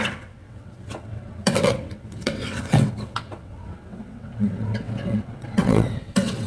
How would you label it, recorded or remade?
remade